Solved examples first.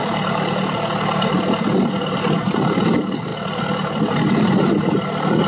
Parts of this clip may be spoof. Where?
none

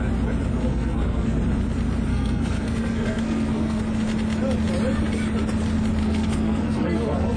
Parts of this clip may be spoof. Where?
0.7-1.4 (codec, SNAC); 2.1-3.8; 6.0-7.4

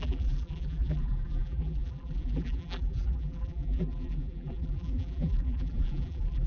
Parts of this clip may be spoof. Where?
0.0-6.5 (vocoder, BigVGAN v2)

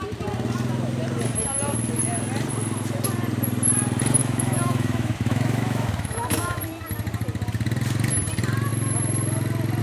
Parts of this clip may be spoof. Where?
4.2-6.6 (autoencoder, DAC-VAE)

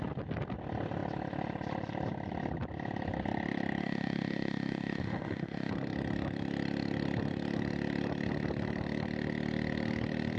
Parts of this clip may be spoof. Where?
3.8-5.7 (autoencoder, DAC-VAE)

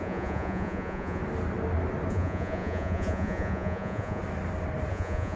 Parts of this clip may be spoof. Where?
0.0-1.2 (vocoder, Vocos); 2.1-4.2; 4.9-5.4